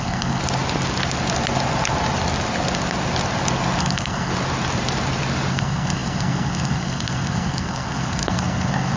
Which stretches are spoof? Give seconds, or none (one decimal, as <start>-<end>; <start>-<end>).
0.0-0.4; 3.8-4.3; 5.5-9.0

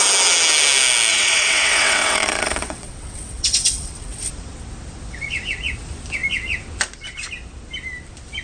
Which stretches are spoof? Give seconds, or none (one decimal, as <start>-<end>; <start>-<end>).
1.1-4.3

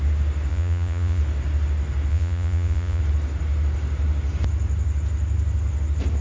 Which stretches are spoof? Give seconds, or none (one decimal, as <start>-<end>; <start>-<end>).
0.5-1.2; 2.1-3.0

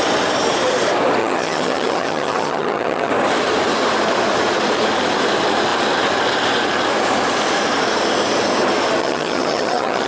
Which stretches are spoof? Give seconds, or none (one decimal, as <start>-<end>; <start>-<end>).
1.2-3.1; 9.0-10.1

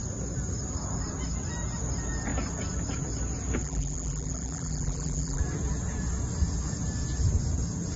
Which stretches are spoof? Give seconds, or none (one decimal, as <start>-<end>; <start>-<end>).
3.6-5.4

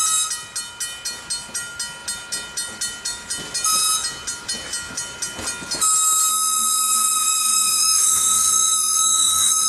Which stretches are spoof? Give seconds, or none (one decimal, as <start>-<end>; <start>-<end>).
6.3-9.7

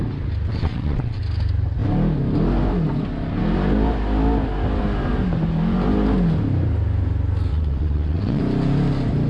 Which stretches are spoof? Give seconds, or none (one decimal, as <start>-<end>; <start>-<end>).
0.5-1.2; 7.5-8.4

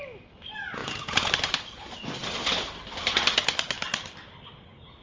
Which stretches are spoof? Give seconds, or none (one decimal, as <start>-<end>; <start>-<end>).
0.8-1.3